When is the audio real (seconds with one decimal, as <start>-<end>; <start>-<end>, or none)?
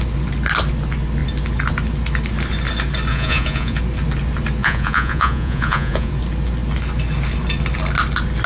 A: 0.0-3.1; 3.8-4.6; 6.1-8.5